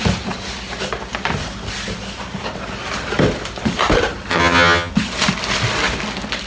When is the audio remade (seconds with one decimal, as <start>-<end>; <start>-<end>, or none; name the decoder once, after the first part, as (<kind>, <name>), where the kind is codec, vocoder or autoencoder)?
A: 4.3-4.9 (vocoder, HiFi-GAN)